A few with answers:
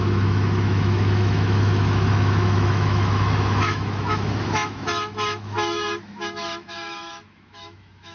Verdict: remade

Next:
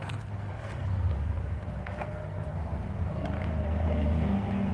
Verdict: remade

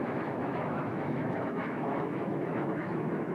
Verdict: remade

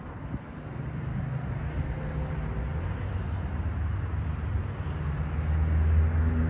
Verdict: recorded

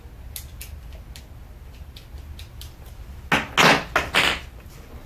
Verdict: recorded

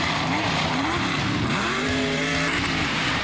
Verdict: remade